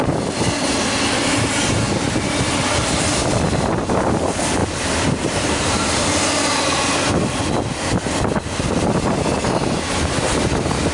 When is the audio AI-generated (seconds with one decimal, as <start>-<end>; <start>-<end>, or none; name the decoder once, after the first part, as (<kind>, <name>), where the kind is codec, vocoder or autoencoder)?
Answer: 4.6-5.9 (vocoder, BigVGAN v2)